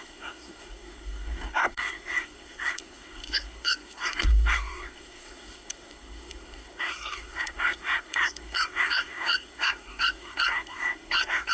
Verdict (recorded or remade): remade